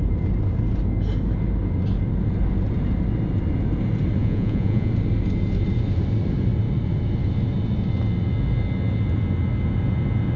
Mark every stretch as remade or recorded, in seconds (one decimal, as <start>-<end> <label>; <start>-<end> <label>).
0.0-4.2 recorded; 4.2-4.9 remade; 4.9-10.4 recorded